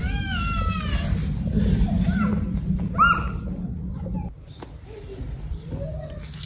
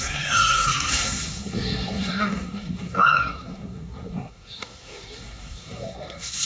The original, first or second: first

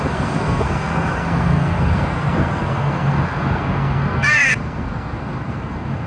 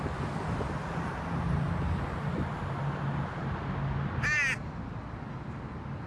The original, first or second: second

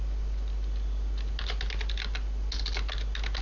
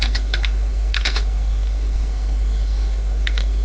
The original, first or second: first